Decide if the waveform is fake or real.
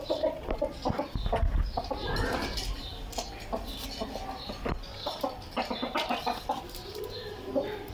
real